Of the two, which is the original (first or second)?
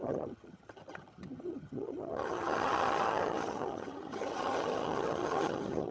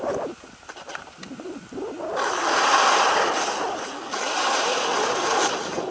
second